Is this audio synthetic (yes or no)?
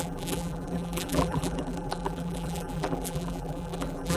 yes